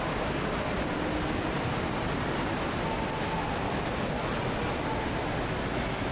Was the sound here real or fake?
real